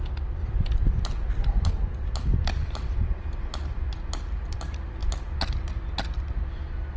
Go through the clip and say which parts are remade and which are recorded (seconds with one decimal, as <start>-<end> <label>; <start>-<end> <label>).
0.0-7.0 recorded